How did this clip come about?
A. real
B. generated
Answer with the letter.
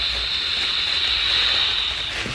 A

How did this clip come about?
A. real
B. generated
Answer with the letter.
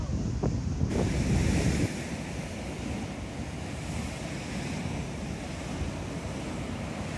A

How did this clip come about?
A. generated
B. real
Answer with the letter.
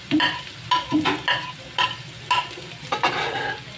B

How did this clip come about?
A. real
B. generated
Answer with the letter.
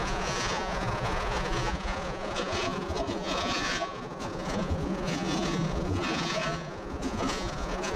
B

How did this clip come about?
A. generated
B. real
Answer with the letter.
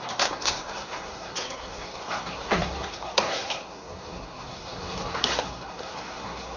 A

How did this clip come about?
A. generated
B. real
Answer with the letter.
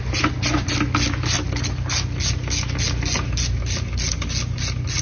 B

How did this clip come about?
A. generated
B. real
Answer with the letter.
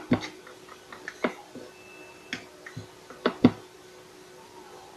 B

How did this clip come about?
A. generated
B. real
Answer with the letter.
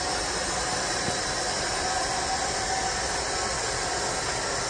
B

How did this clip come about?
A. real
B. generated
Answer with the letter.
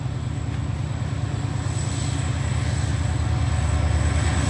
A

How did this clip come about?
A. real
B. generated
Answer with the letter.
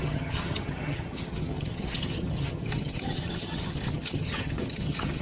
B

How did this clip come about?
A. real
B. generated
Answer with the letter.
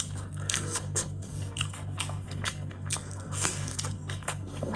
B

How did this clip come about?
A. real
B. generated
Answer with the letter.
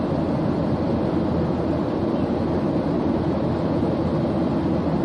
A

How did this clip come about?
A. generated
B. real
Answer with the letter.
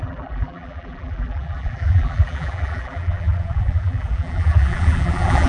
A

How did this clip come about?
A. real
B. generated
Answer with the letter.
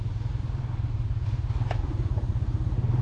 B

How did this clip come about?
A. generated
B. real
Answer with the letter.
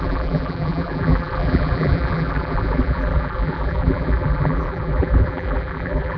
A